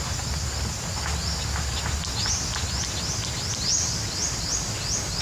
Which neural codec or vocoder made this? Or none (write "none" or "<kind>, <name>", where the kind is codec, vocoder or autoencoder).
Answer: none